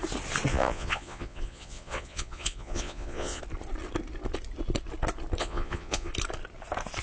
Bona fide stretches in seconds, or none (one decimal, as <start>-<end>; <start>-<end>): 0.0-0.5; 3.4-5.4; 6.1-7.0